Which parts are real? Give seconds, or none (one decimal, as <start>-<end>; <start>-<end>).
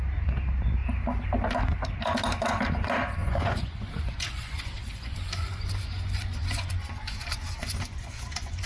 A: 0.0-3.2